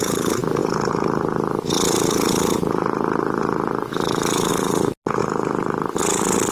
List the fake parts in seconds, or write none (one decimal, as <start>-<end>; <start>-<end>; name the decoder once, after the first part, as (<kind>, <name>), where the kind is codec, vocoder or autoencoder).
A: none